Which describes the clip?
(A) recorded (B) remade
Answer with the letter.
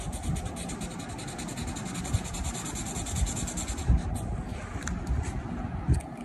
A